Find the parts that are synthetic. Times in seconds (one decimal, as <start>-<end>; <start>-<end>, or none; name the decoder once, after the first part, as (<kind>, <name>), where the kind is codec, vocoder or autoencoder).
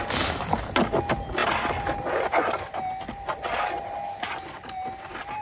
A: none